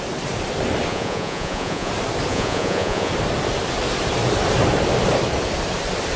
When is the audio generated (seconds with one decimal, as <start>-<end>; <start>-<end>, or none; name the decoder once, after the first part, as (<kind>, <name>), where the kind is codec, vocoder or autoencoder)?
0.9-1.9 (vocoder, Vocos); 2.3-3.1